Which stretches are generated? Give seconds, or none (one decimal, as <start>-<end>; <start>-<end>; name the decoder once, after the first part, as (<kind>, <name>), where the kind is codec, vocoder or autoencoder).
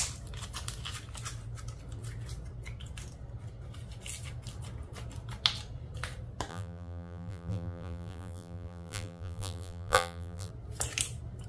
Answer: 6.5-10.5 (vocoder, BigVGAN v2)